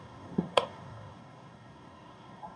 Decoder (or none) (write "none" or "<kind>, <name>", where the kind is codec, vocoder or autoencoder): codec, SNAC